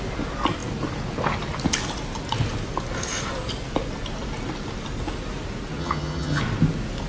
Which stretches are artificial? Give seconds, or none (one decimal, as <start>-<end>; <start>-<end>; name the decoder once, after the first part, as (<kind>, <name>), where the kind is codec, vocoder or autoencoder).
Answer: 5.8-6.4 (vocoder, HiFi-GAN)